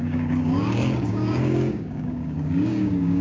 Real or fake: fake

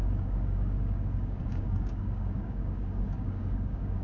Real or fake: fake